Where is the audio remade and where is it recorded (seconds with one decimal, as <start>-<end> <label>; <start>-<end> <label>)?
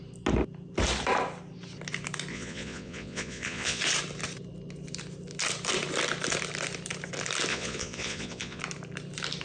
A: 0.0-2.3 recorded; 2.3-3.8 remade; 3.8-7.5 recorded; 7.5-8.6 remade; 8.6-9.4 recorded